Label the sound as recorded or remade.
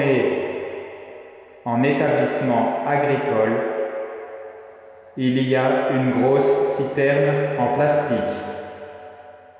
recorded